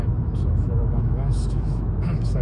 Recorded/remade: remade